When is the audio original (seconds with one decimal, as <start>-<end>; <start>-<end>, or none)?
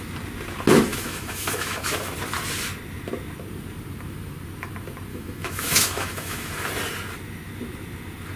0.0-0.9; 2.1-5.1; 6.5-8.4